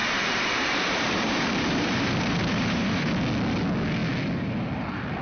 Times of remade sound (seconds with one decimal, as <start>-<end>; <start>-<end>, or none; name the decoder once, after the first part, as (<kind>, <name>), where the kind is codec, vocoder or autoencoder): 0.0-3.1 (vocoder, BigVGAN v2)